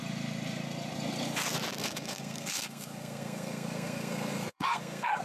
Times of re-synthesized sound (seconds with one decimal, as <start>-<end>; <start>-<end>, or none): 1.8-5.2